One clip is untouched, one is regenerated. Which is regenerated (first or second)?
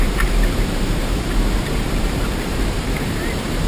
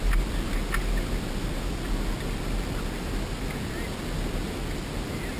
first